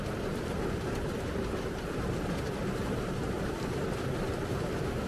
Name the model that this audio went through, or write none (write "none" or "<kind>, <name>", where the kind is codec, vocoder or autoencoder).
vocoder, BigVGAN v2